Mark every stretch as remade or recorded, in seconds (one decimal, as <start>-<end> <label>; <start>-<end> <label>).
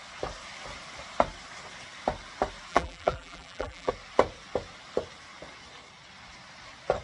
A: 0.0-2.7 recorded; 2.7-3.9 remade; 3.9-7.0 recorded